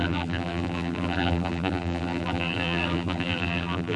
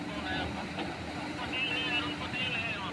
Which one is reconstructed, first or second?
first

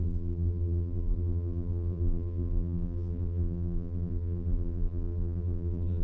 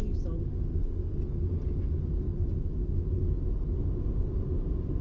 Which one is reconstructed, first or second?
first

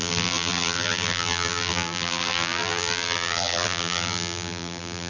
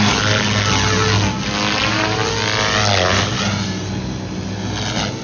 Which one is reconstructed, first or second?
first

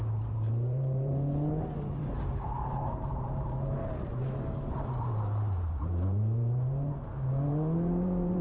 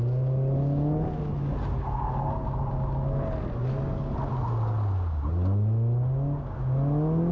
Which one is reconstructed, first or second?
first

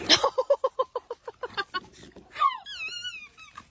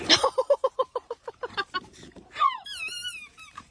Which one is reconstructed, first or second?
second